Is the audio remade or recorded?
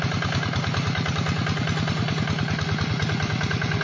recorded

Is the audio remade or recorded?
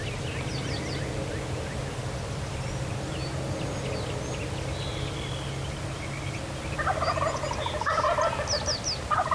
recorded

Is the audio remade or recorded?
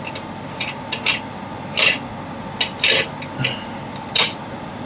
recorded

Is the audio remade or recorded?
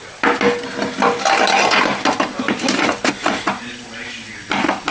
recorded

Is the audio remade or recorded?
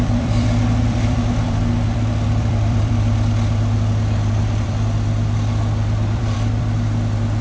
remade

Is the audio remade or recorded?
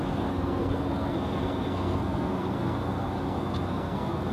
remade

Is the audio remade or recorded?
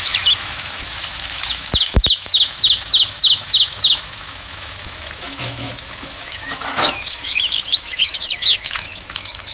remade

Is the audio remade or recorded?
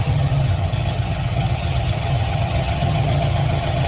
remade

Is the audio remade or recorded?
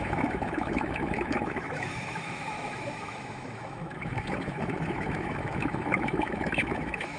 remade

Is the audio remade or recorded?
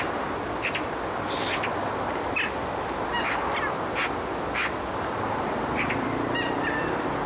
recorded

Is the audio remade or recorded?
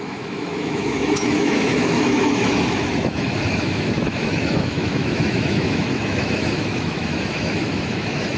remade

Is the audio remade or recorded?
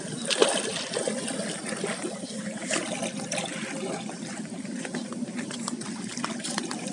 recorded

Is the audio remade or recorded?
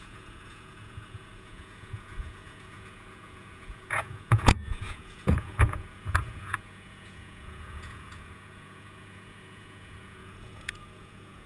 remade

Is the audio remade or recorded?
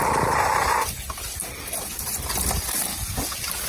recorded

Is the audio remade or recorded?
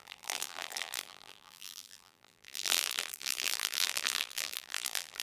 remade